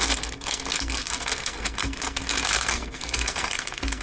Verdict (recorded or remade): remade